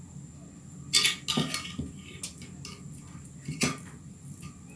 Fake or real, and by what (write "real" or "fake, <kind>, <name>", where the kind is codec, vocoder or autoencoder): real